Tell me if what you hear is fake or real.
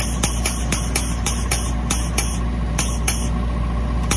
real